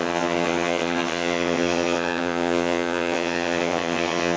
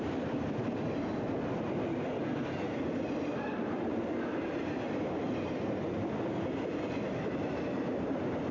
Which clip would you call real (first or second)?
second